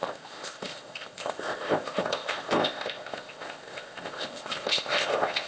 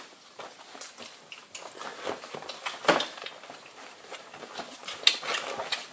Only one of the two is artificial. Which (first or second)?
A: first